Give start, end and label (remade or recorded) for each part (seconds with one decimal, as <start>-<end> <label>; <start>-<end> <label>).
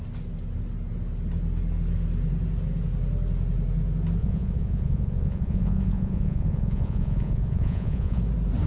0.0-4.2 recorded; 4.2-8.2 remade; 8.2-8.7 recorded